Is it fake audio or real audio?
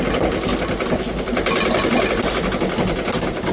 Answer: real